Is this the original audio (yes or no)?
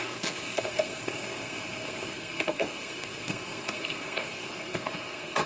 no